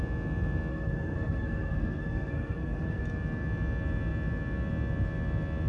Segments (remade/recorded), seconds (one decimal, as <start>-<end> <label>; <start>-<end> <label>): 0.0-0.7 recorded; 0.7-3.0 remade; 3.0-5.7 recorded